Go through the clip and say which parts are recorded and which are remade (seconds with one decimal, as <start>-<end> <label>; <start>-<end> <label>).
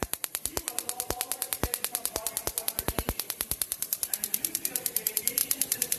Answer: 0.0-0.5 remade; 0.5-2.8 recorded; 2.8-6.0 remade